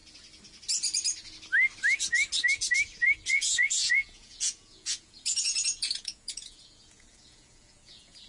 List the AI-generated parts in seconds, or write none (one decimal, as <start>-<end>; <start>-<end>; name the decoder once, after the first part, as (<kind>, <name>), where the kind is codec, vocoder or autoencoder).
3.3-8.3 (vocoder, Vocos)